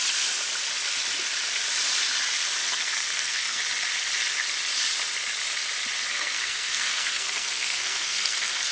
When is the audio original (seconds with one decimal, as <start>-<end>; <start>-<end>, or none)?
0.0-2.6; 3.6-6.1